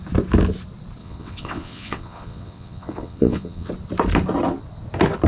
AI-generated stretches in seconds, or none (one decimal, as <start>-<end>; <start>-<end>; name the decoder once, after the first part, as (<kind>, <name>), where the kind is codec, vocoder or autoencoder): 1.0-3.7 (vocoder, WaveNeXt)